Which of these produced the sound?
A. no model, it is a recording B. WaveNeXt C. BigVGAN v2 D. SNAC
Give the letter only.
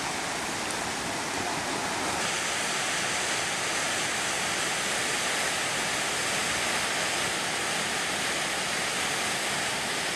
A